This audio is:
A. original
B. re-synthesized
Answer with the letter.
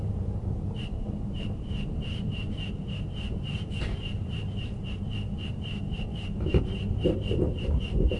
B